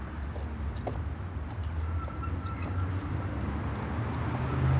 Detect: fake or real real